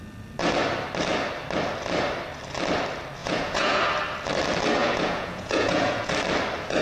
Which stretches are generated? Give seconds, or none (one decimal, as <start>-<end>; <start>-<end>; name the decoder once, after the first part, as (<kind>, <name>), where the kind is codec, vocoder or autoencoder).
3.2-3.8 (vocoder, Vocos); 4.8-6.1